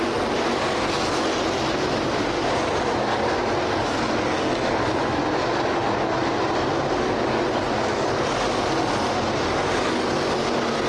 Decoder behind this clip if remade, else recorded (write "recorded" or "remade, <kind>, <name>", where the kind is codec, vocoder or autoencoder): recorded